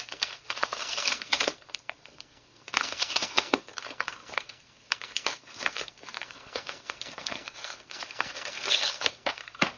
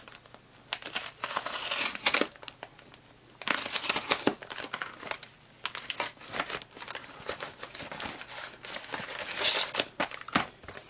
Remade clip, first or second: first